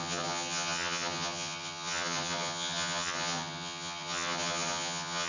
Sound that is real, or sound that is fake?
fake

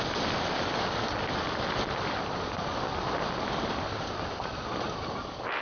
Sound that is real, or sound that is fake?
real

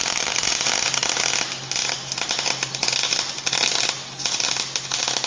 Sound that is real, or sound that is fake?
real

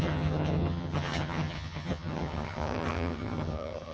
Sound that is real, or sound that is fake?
fake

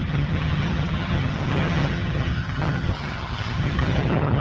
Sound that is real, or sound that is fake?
fake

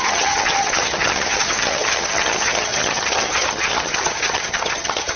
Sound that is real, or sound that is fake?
fake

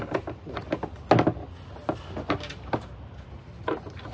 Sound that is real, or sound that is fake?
real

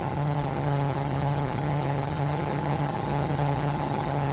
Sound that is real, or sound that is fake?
fake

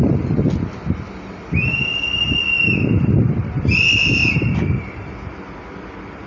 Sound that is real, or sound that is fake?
real